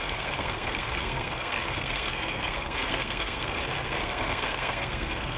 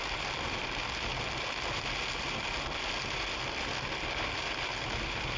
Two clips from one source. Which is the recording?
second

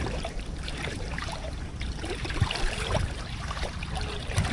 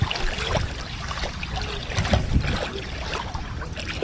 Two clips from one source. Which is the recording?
second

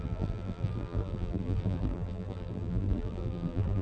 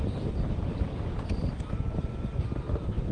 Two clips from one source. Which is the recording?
second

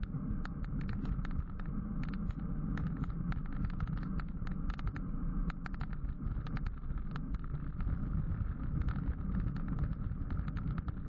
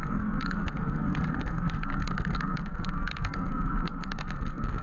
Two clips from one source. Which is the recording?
first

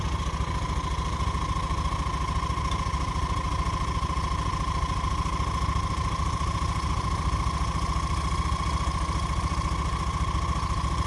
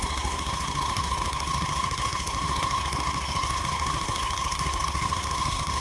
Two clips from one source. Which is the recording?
first